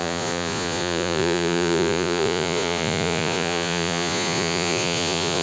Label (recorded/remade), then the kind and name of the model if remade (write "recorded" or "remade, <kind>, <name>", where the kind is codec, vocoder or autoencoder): remade, vocoder, Vocos